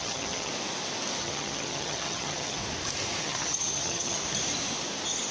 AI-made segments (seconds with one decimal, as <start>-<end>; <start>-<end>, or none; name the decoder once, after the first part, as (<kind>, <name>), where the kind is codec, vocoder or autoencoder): 0.0-0.5 (vocoder, HiFi-GAN); 1.2-2.6; 3.2-4.2